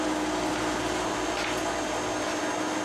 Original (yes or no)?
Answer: yes